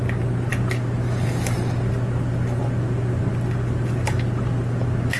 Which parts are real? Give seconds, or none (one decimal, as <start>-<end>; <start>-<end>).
0.0-5.2